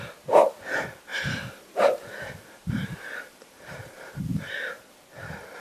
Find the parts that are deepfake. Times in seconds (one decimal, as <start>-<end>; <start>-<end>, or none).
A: 1.1-4.5